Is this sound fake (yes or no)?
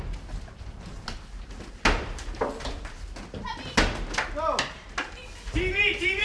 no